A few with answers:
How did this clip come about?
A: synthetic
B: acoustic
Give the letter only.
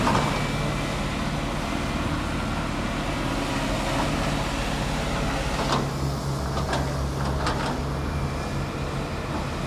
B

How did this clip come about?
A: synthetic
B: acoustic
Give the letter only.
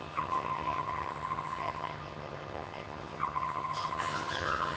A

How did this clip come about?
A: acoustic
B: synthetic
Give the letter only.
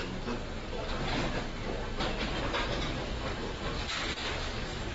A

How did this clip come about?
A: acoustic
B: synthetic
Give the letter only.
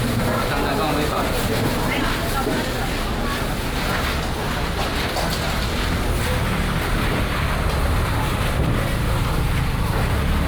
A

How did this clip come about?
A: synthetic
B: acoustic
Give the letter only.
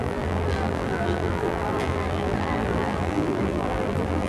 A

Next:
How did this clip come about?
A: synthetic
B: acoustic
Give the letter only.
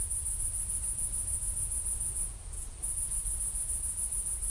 A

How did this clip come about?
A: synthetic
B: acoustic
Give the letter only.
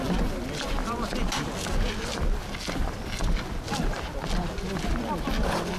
B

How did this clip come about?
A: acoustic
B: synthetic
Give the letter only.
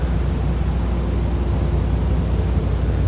A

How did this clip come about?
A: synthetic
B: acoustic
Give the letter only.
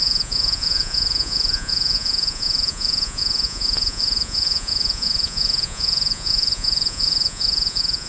A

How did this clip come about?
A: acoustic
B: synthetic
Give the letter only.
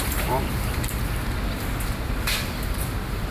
A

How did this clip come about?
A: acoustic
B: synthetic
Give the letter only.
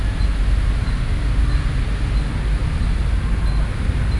A